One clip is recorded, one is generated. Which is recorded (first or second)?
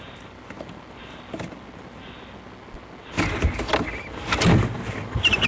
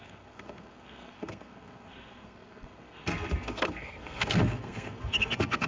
first